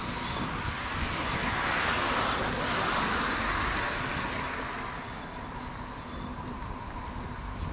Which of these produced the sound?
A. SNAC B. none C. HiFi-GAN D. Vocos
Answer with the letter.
B